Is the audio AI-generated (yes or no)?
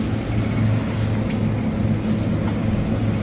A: no